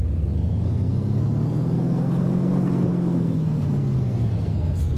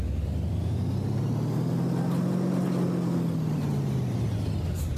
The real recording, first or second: second